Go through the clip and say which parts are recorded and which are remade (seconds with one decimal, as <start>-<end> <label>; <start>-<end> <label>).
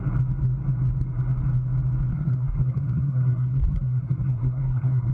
0.0-2.1 recorded; 2.1-5.1 remade